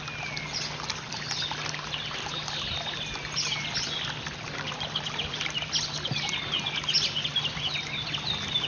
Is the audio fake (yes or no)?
no